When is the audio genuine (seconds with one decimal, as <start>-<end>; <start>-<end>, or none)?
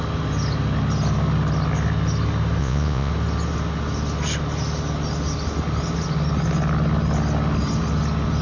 0.0-2.6; 3.1-8.4